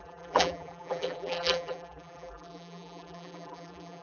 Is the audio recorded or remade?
remade